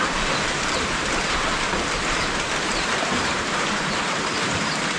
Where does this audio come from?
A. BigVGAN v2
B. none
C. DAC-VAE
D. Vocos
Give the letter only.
A